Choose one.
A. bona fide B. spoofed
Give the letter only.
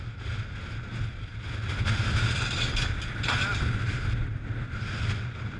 A